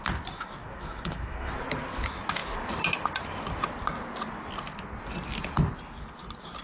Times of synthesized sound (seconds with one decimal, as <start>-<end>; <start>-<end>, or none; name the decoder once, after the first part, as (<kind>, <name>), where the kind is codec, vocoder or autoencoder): 0.6-1.5 (autoencoder, DAC-VAE)